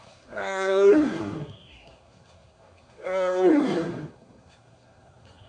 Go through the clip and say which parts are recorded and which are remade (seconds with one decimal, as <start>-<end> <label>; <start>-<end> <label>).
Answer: 0.0-5.5 remade